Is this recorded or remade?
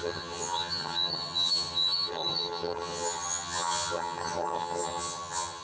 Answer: remade